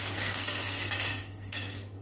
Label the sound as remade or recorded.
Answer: remade